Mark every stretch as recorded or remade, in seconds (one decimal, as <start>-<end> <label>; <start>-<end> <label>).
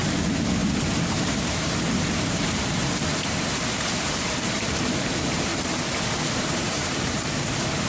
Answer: 0.0-5.5 remade; 5.5-6.3 recorded; 6.3-7.9 remade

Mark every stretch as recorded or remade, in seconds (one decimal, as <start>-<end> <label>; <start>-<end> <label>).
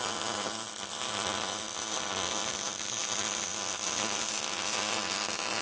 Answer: 0.0-5.6 recorded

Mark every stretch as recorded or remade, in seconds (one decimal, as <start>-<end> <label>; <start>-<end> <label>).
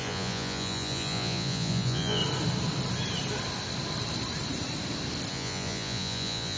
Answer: 0.0-2.2 remade; 2.2-5.3 recorded; 5.3-6.6 remade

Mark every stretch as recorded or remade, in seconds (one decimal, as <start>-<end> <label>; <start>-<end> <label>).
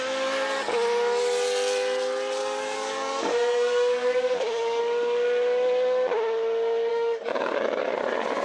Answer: 0.0-2.4 recorded; 2.4-4.8 remade; 4.8-6.9 recorded; 6.9-7.9 remade; 7.9-8.4 recorded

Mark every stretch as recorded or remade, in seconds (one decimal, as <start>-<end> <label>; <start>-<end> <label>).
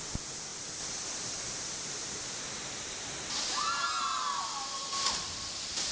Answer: 0.0-5.9 recorded